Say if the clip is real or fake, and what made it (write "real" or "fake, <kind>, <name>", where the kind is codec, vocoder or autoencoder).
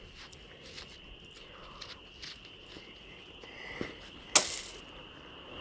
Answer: real